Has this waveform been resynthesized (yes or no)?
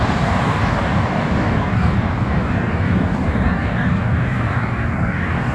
yes